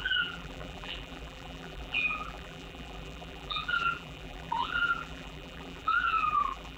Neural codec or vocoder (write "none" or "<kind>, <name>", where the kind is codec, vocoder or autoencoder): vocoder, BigVGAN v2